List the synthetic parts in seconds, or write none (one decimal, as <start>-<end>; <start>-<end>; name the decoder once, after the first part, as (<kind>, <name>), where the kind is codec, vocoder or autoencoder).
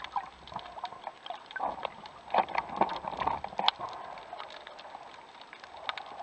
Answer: none